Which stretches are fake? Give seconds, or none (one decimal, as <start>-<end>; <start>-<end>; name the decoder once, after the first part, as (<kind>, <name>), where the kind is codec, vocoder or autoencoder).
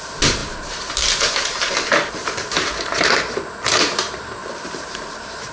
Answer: 0.0-4.4 (vocoder, BigVGAN v2); 4.9-5.5